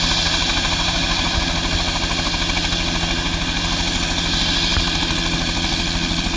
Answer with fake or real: real